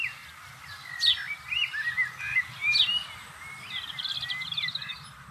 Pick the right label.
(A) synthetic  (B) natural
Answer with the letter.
B